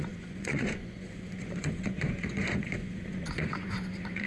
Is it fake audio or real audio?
fake